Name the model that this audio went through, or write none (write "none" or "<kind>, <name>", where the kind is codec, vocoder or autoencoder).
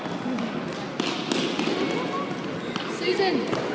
none